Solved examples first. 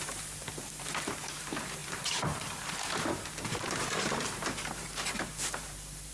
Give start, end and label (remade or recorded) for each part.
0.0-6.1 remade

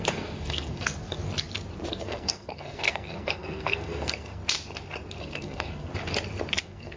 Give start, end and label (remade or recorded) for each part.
0.0-1.2 remade; 1.2-1.9 recorded; 1.9-4.4 remade; 4.4-5.2 recorded; 5.2-5.9 remade; 5.9-6.6 recorded; 6.6-7.0 remade

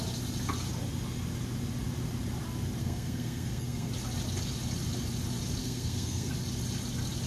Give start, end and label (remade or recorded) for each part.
0.0-2.8 recorded; 2.8-3.9 remade; 3.9-5.6 recorded; 5.6-6.3 remade; 6.3-7.3 recorded

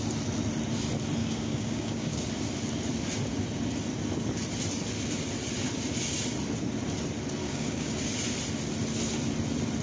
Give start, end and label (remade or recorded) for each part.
0.0-1.2 recorded; 1.2-2.3 remade; 2.3-7.4 recorded; 7.4-8.1 remade; 8.1-9.8 recorded